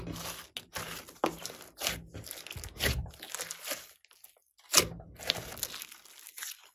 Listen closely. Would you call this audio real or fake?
real